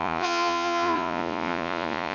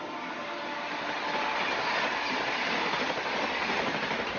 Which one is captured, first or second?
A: second